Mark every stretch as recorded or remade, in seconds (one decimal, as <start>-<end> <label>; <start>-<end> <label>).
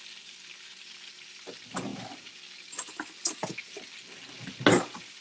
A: 0.0-5.2 recorded